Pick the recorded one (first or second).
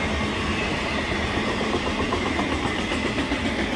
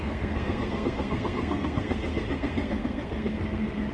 first